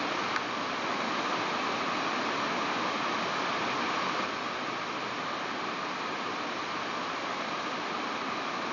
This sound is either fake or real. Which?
real